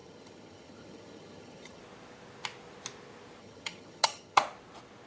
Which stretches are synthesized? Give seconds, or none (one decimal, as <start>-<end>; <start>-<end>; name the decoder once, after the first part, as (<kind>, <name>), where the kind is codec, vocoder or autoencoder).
0.0-1.8 (vocoder, HiFi-GAN); 3.4-4.4

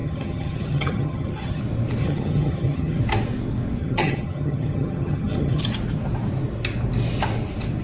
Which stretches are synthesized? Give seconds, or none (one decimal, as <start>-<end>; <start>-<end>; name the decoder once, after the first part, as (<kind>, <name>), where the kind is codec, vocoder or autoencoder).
0.0-1.6 (vocoder, HiFi-GAN); 2.0-3.0; 3.8-5.6

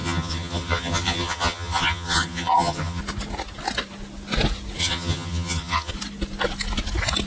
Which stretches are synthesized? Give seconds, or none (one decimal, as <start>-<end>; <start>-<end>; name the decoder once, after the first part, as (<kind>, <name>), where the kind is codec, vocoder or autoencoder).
0.0-3.0 (vocoder, HiFi-GAN); 4.8-5.9

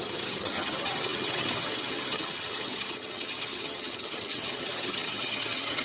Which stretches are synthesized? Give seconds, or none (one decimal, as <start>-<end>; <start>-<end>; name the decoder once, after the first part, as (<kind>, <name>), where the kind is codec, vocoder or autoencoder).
0.0-5.8 (vocoder, HiFi-GAN)

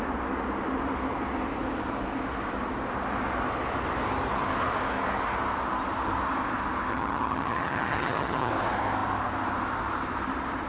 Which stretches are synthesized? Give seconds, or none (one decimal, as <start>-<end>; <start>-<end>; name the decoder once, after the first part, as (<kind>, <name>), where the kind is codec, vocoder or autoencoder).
6.9-8.5 (vocoder, HiFi-GAN)

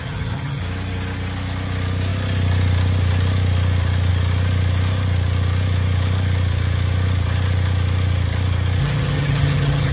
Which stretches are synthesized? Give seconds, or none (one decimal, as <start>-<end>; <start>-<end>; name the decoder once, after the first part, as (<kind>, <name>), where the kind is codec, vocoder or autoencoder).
0.0-0.6 (vocoder, HiFi-GAN); 8.8-9.9

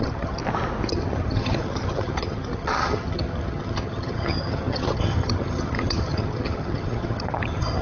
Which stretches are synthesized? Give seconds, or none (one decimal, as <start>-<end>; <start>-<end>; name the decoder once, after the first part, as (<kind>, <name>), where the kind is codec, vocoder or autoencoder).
0.0-0.4 (vocoder, HiFi-GAN); 0.9-7.8

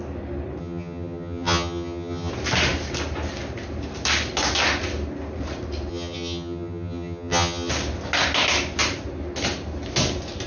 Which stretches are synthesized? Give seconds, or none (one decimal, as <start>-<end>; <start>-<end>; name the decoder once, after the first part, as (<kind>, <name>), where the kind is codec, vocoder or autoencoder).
0.6-2.3 (vocoder, HiFi-GAN); 5.9-7.7